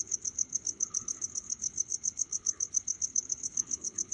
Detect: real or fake fake